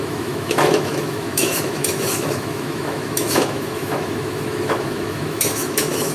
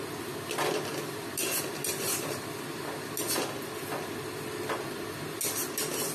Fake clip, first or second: first